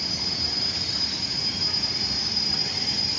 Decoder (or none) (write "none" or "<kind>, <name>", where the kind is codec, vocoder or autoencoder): none